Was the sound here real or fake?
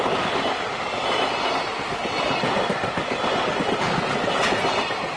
real